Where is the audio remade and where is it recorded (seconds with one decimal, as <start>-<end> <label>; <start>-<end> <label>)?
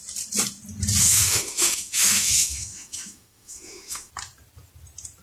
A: 0.0-1.0 recorded; 1.0-4.1 remade; 4.1-5.2 recorded